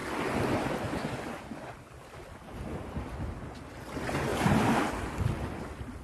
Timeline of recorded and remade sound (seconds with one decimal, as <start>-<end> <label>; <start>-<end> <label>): 0.0-4.3 recorded; 4.3-5.0 remade; 5.0-6.0 recorded